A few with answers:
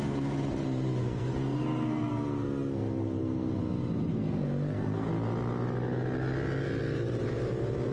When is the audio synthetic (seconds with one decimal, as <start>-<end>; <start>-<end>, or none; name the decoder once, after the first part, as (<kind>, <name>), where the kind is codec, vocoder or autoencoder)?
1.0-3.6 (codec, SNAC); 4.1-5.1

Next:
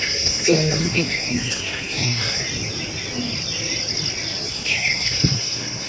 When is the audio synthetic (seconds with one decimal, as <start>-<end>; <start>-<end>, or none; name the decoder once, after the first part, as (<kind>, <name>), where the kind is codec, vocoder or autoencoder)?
0.0-2.4 (codec, SNAC); 4.5-5.9

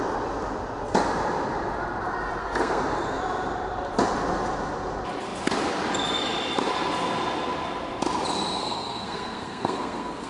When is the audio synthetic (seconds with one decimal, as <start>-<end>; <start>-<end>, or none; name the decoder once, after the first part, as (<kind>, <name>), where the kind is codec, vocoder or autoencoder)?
2.4-3.2 (codec, SNAC); 8.6-10.3